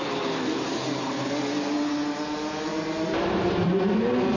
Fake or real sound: real